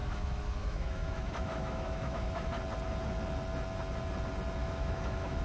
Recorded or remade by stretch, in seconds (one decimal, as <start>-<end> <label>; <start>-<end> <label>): 0.0-2.5 remade; 2.5-4.6 recorded; 4.6-5.4 remade